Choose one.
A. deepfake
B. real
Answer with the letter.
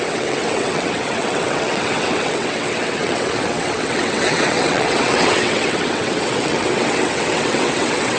A